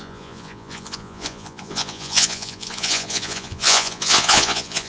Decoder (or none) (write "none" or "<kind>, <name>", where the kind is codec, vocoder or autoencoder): vocoder, Vocos